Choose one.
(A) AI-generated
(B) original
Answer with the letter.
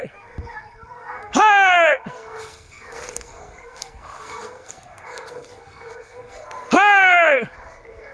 A